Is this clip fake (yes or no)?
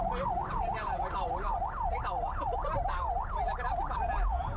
no